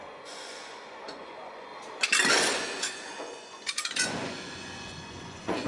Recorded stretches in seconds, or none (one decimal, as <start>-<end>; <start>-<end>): 1.7-2.3